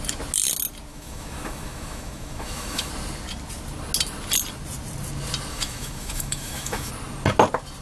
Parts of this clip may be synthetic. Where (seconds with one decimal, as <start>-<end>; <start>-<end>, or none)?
0.9-2.9; 5.5-6.9